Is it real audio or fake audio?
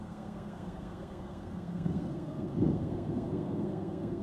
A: fake